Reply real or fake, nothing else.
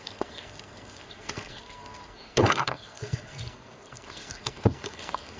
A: fake